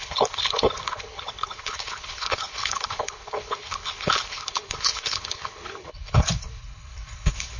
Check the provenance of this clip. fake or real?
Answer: fake